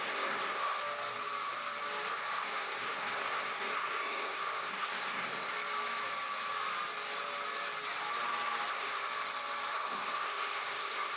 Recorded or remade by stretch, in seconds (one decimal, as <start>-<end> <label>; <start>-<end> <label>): 0.0-0.8 remade; 0.8-2.1 recorded; 2.1-5.5 remade; 5.5-8.7 recorded; 8.7-9.1 remade; 9.1-9.7 recorded; 9.7-11.2 remade